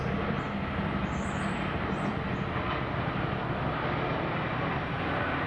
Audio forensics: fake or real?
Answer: fake